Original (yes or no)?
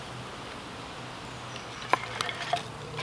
yes